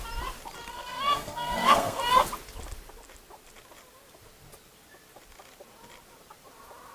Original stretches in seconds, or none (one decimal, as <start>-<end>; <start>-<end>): 0.0-0.7; 2.0-6.9